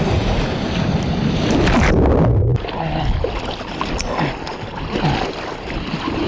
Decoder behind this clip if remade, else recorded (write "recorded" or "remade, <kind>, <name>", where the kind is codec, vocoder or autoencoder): recorded